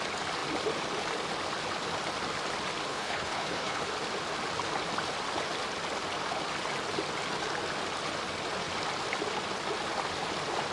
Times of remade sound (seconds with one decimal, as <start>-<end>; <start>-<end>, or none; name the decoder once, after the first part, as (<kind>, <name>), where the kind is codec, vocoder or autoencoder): 2.9-3.8 (codec, HILCodec)